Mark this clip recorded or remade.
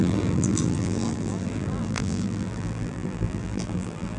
remade